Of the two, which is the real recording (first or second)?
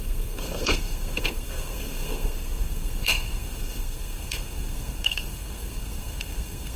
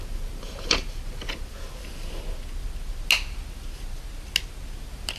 second